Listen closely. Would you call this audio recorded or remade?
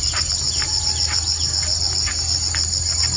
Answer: recorded